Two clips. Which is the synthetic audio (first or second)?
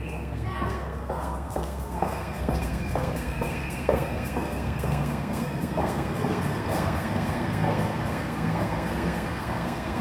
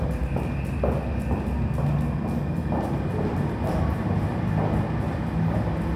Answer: first